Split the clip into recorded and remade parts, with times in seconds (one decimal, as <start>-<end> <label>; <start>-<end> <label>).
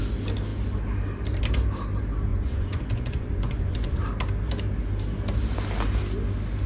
0.0-2.3 recorded; 2.3-4.0 remade; 4.0-6.7 recorded